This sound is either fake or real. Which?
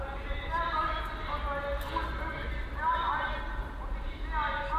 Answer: real